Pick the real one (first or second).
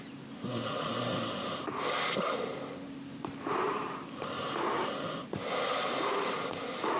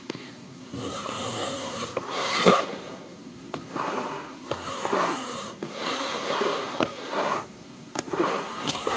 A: first